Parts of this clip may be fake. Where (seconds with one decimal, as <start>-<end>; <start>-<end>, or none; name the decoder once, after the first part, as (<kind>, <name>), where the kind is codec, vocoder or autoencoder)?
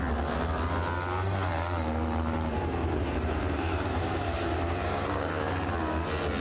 1.5-5.3 (vocoder, BigVGAN v2)